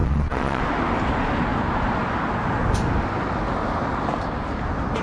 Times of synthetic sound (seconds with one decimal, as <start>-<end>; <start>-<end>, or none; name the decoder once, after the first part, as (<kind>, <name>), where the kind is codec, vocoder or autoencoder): 0.0-0.6 (vocoder, Vocos)